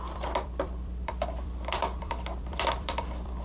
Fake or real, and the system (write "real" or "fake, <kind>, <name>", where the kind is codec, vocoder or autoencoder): fake, vocoder, BigVGAN v2